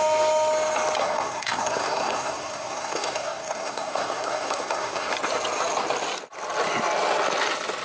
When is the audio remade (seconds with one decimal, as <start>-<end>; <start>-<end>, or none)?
1.0-5.1